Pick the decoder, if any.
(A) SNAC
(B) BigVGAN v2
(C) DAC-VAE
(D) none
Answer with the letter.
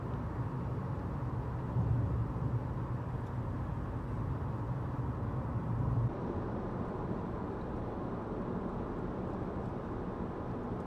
D